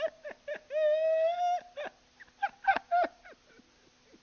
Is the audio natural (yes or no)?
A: yes